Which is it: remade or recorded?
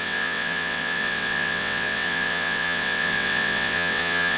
remade